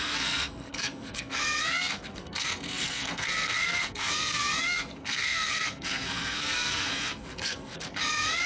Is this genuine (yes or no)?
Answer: no